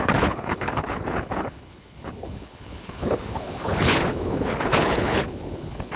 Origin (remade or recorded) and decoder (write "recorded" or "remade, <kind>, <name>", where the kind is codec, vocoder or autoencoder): remade, codec, HILCodec